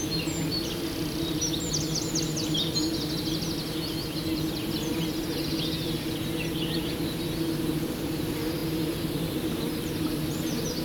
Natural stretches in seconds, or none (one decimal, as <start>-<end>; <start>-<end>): 0.0-10.8